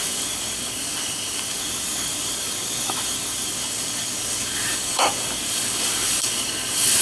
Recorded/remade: remade